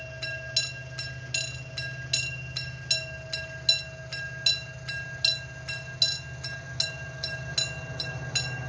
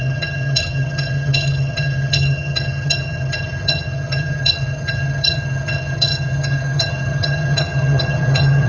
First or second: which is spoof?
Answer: second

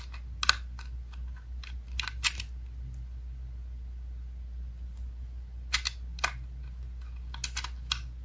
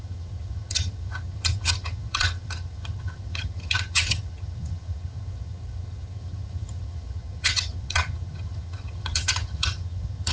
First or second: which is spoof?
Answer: second